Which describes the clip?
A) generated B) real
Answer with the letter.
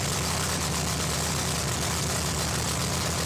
B